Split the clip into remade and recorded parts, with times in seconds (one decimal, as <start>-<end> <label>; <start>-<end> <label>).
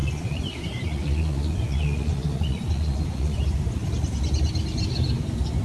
0.0-3.4 remade; 3.4-5.6 recorded